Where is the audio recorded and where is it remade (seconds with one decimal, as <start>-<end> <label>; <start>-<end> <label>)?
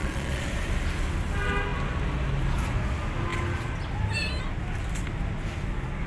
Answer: 0.0-0.5 remade; 0.5-6.1 recorded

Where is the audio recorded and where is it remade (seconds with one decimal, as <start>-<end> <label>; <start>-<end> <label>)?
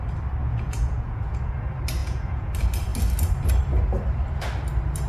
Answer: 0.0-0.4 recorded; 0.4-1.5 remade; 1.5-2.0 recorded; 2.0-2.5 remade; 2.5-5.1 recorded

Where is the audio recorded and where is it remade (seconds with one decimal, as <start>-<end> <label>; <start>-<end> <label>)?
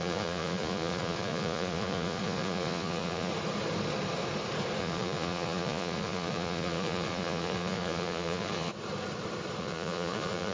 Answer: 0.0-3.3 remade; 3.3-4.8 recorded; 4.8-8.7 remade; 8.7-9.6 recorded; 9.6-10.5 remade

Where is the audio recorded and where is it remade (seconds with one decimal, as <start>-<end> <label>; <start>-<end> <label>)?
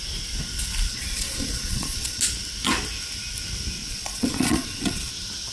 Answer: 0.0-0.9 recorded; 0.9-2.2 remade; 2.2-3.8 recorded; 3.8-5.1 remade; 5.1-5.5 recorded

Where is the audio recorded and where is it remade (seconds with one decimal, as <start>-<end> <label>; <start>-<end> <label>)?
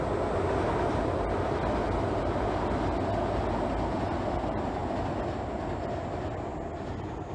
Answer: 0.0-7.3 recorded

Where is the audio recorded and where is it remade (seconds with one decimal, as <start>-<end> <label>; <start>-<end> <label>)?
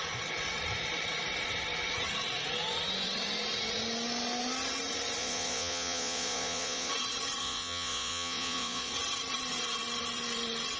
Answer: 0.0-5.2 recorded; 5.2-6.9 remade; 6.9-7.4 recorded; 7.4-8.9 remade; 8.9-10.8 recorded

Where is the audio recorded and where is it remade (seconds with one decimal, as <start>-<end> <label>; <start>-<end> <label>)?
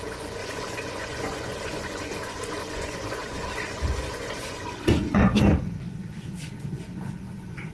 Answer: 0.0-7.7 remade